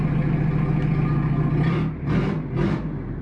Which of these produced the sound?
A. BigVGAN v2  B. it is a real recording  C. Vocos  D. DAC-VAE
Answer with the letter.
B